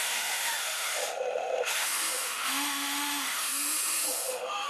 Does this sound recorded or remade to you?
remade